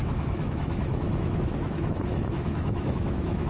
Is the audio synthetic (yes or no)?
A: yes